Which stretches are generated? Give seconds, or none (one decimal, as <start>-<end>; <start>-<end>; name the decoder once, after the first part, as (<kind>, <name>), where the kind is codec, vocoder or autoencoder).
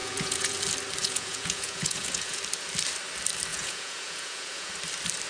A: 0.0-0.6 (vocoder, Vocos); 1.0-2.4; 3.5-4.7